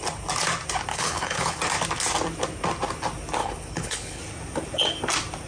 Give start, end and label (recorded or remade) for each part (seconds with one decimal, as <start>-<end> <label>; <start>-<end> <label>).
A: 0.0-0.9 recorded; 0.9-1.6 remade; 1.6-3.4 recorded; 3.4-4.2 remade; 4.2-5.5 recorded